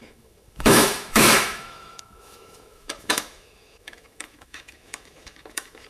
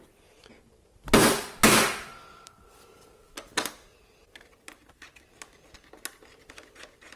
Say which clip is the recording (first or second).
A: second